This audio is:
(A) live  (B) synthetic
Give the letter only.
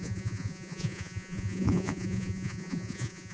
B